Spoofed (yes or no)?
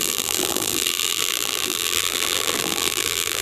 yes